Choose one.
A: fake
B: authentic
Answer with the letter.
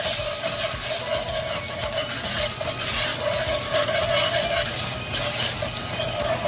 B